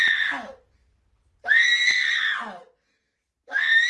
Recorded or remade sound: recorded